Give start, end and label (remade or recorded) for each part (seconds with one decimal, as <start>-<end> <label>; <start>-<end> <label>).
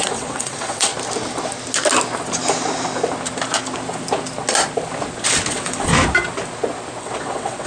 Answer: 0.0-0.9 remade; 0.9-5.5 recorded; 5.5-5.9 remade; 5.9-7.0 recorded; 7.0-7.7 remade